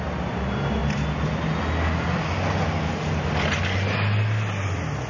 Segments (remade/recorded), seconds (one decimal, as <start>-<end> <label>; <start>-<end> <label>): 0.0-5.1 recorded